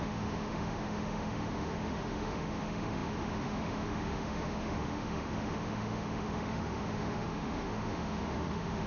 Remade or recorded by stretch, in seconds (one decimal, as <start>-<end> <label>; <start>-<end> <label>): 0.0-8.9 remade